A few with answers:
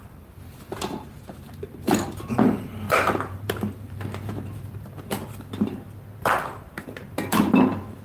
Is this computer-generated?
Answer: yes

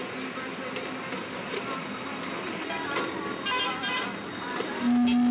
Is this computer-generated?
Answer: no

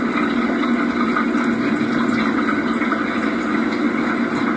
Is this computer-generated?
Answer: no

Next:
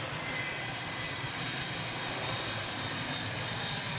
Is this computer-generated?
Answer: yes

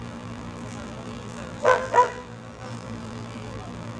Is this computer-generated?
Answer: yes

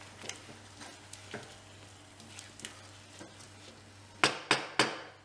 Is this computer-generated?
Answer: no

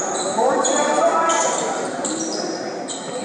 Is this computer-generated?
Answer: no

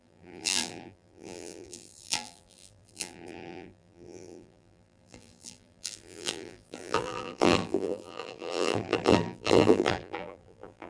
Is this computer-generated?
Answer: yes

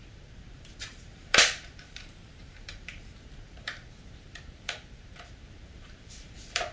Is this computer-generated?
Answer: yes